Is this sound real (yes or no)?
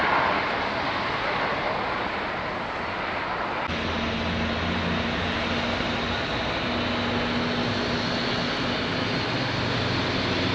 yes